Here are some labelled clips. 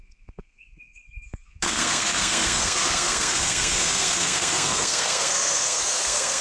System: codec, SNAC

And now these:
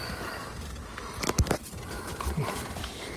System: none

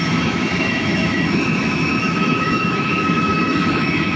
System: autoencoder, DAC-VAE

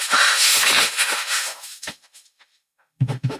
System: autoencoder, DAC-VAE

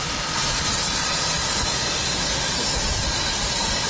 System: none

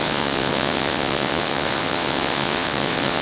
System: vocoder, WaveNeXt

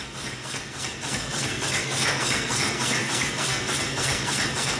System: codec, SNAC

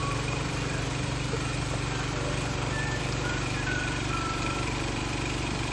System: vocoder, BigVGAN v2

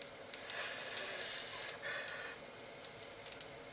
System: none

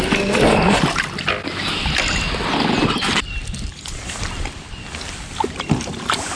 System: none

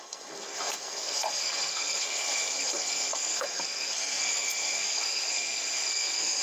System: codec, SNAC